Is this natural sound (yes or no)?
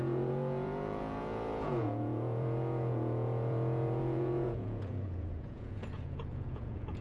no